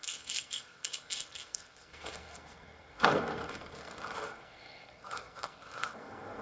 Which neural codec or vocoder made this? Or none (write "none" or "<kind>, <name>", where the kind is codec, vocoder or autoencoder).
codec, SNAC